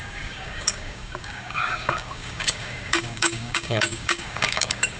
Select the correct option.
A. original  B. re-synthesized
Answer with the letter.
B